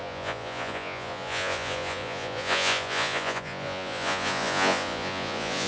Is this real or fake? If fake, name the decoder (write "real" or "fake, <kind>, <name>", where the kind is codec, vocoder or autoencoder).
fake, vocoder, Vocos